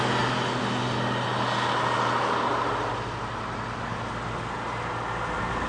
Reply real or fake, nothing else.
real